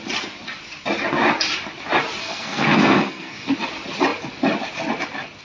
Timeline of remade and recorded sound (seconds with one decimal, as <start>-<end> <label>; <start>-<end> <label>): 0.0-2.2 recorded; 2.2-3.5 remade; 3.5-5.4 recorded